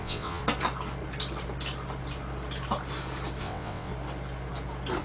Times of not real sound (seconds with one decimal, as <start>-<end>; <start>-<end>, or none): 0.0-0.4; 3.4-3.9